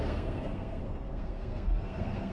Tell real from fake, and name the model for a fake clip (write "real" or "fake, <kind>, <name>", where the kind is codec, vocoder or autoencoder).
fake, codec, SNAC